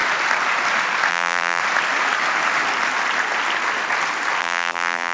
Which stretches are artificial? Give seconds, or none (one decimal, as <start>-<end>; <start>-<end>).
1.1-1.6; 4.4-5.1